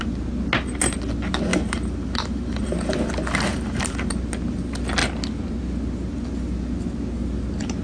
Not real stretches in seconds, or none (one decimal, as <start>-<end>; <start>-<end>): 1.5-2.7; 3.5-4.1